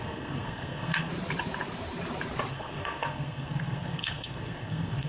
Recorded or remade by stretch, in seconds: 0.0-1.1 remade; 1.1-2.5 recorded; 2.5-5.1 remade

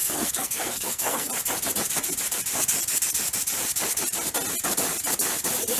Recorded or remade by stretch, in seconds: 0.0-1.3 remade; 1.3-5.8 recorded

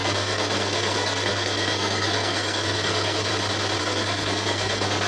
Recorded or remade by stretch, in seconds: 0.0-3.3 remade; 3.3-3.8 recorded; 3.8-5.1 remade

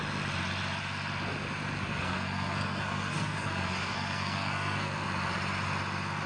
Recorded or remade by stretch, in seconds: 0.0-1.9 recorded; 1.9-4.9 remade; 4.9-6.3 recorded

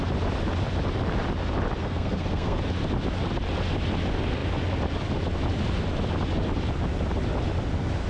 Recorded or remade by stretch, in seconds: 0.0-1.8 recorded; 1.8-2.6 remade; 2.6-8.1 recorded